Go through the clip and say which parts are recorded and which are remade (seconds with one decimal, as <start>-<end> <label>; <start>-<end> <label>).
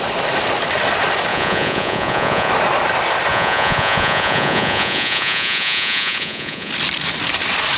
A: 0.0-1.3 recorded; 1.3-2.5 remade; 2.5-3.3 recorded; 3.3-6.7 remade; 6.7-7.8 recorded